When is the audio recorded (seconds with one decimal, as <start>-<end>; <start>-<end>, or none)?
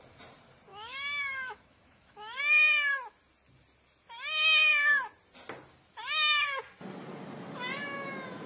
0.0-0.7; 2.4-8.5